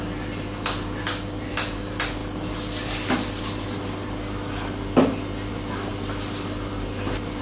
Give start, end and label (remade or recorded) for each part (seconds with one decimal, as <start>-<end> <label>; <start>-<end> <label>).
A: 0.0-7.4 recorded